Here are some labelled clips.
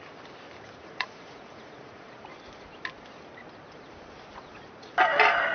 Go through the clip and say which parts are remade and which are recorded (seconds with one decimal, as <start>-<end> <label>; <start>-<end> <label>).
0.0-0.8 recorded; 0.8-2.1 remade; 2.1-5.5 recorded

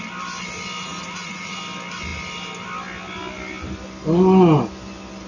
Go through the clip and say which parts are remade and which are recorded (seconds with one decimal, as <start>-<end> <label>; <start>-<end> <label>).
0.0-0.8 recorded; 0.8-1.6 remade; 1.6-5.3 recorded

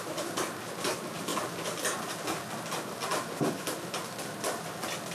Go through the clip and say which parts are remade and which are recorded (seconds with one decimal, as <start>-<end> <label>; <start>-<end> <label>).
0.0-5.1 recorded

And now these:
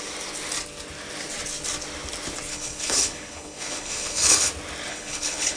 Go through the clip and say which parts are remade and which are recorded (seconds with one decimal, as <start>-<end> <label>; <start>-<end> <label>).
0.0-2.5 recorded; 2.5-4.5 remade; 4.5-4.9 recorded; 4.9-5.6 remade